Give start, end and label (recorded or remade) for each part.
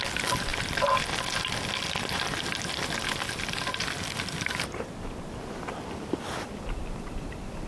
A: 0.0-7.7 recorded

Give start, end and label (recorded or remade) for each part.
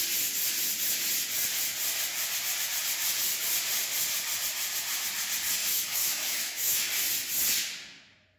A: 0.0-5.6 recorded; 5.6-6.9 remade; 6.9-8.4 recorded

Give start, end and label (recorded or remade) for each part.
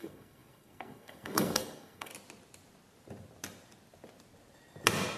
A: 0.0-2.1 remade; 2.1-5.2 recorded